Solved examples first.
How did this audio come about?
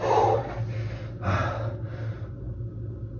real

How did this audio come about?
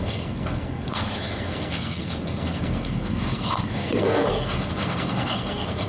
fake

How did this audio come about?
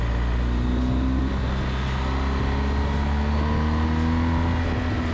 real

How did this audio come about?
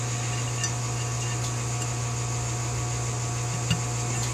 real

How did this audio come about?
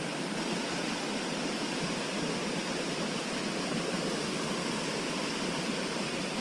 real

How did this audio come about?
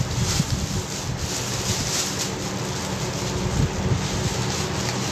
real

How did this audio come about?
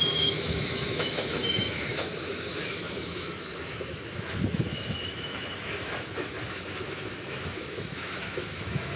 fake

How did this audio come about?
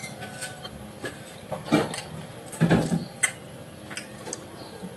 real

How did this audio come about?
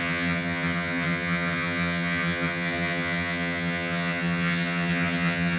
fake